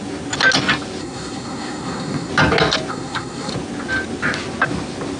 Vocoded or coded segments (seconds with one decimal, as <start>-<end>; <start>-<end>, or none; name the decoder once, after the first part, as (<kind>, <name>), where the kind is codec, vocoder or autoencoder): 1.0-2.3 (codec, SNAC); 2.9-3.5